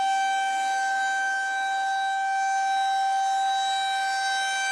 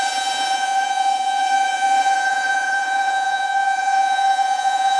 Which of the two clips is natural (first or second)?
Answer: first